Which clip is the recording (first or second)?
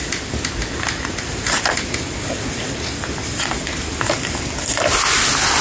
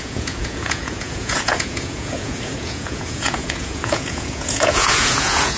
first